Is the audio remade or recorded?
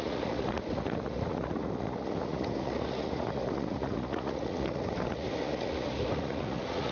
remade